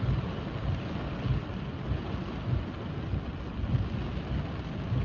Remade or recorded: recorded